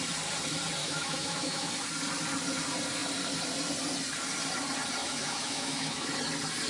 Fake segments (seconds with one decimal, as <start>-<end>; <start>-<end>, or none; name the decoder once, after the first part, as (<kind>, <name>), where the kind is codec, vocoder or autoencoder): 0.8-1.7 (autoencoder, DAC-VAE); 5.0-6.1